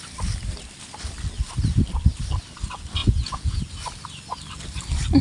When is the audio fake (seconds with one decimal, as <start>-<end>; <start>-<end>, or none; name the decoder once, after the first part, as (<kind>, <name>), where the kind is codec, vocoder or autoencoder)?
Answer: 3.0-3.6 (vocoder, Vocos)